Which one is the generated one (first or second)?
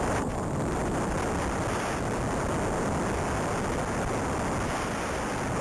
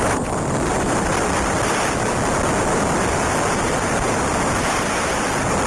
second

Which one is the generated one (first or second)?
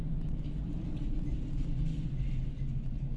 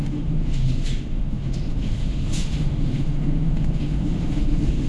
second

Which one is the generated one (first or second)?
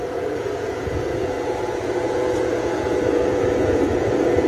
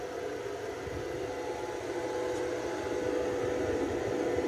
first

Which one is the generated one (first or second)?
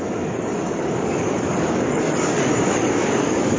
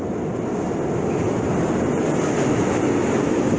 first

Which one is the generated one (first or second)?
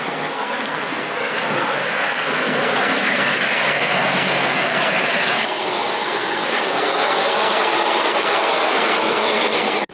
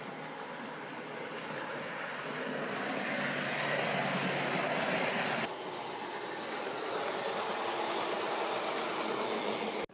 first